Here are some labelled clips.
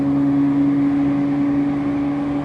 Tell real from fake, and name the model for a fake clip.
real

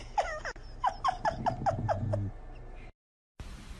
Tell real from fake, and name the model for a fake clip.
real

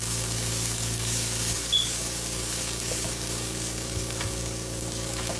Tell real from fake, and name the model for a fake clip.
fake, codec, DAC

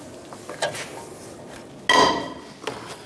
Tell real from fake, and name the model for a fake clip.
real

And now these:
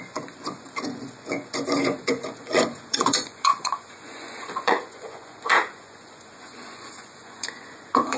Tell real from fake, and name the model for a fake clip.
fake, vocoder, Vocos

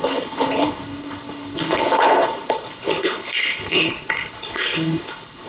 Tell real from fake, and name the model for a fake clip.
fake, codec, HILCodec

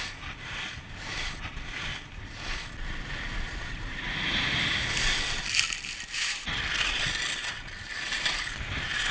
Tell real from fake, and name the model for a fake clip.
real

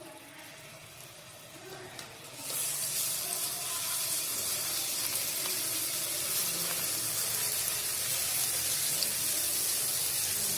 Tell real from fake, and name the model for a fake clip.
real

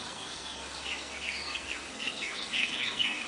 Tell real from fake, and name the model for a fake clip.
fake, codec, SNAC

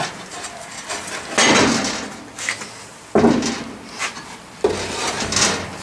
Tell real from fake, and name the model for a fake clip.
real